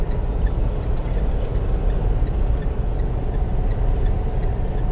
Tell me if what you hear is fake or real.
real